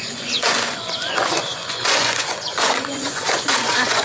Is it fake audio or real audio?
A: fake